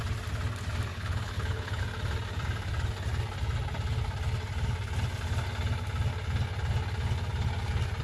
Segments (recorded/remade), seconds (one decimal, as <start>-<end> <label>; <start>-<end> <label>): 0.0-0.9 recorded; 0.9-1.8 remade; 1.8-8.0 recorded